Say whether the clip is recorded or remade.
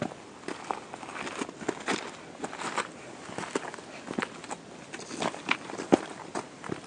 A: recorded